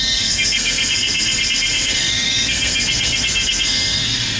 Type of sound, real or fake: fake